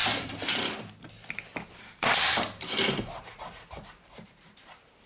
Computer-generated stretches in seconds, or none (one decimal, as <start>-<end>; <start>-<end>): 0.0-1.1; 1.5-4.6